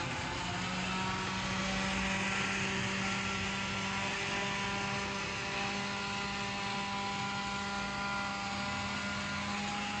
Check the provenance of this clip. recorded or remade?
recorded